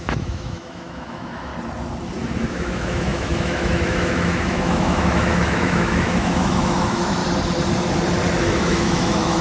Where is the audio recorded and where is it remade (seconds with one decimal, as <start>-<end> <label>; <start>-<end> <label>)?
0.0-1.5 remade; 1.5-2.4 recorded; 2.4-7.2 remade; 7.2-8.4 recorded; 8.4-9.4 remade